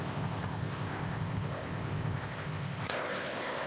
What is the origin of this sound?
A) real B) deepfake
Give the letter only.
B